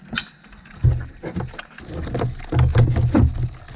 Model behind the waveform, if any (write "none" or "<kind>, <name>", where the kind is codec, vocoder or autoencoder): none